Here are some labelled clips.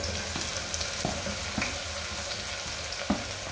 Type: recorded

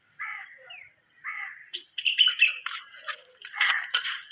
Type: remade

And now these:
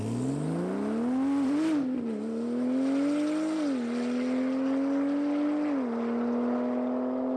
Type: recorded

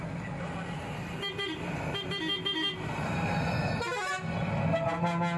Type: recorded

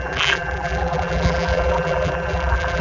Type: remade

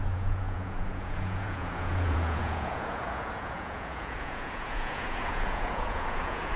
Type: remade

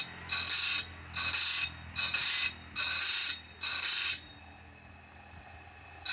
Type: recorded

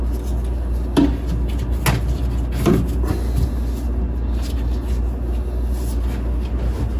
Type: recorded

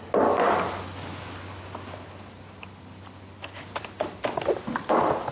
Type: recorded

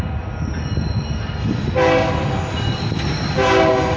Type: recorded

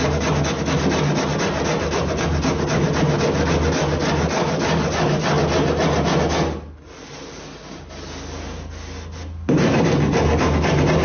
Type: recorded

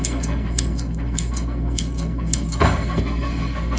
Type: remade